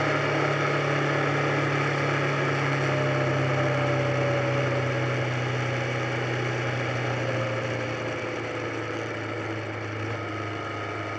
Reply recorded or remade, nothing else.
recorded